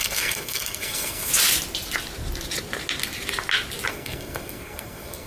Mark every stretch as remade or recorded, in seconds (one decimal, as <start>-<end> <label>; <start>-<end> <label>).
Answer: 0.0-1.3 remade; 1.3-3.9 recorded; 3.9-5.3 remade